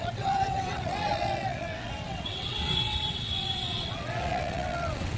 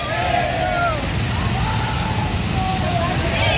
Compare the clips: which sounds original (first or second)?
second